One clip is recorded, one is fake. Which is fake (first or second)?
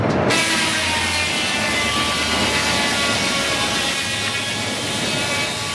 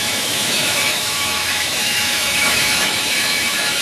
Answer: second